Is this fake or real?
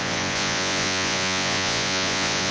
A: fake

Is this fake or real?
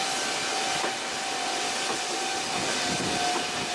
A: real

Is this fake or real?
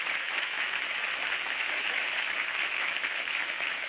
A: fake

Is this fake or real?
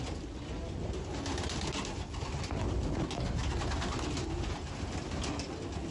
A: real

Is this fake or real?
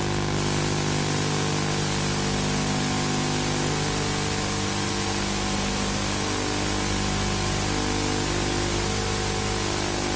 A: real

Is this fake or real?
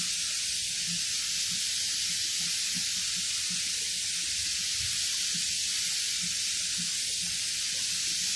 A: real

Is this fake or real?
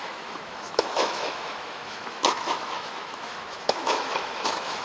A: fake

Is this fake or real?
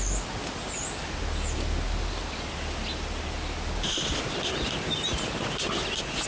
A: real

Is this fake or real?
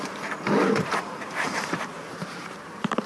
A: fake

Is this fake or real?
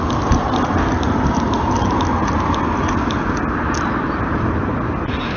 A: real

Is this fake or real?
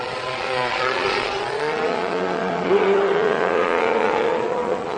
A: fake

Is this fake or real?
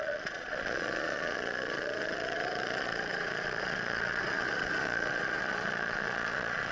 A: fake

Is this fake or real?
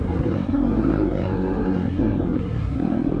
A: fake